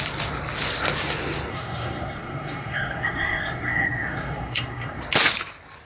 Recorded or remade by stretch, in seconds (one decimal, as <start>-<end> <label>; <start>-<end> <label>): 0.0-1.5 recorded; 1.5-5.0 remade; 5.0-5.8 recorded